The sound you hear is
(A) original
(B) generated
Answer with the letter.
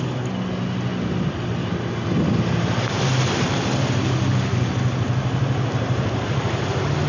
A